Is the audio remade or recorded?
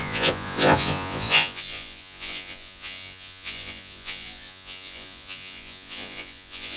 remade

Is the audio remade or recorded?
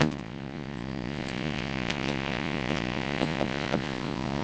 remade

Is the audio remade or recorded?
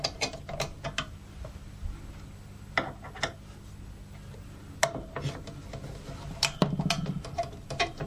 recorded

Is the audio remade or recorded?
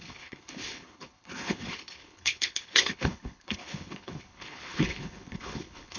remade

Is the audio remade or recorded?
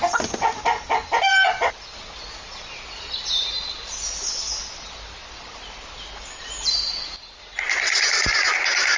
recorded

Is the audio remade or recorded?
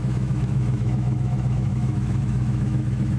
remade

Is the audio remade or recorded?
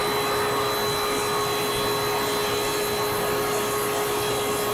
recorded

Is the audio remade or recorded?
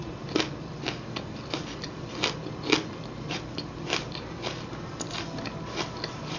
recorded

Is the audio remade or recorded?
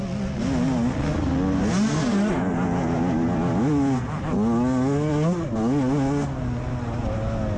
recorded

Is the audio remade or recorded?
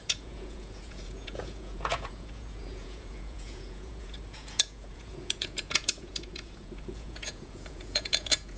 remade